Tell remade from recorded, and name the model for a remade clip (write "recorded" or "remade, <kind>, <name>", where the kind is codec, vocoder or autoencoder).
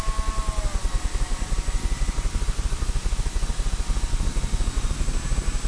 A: recorded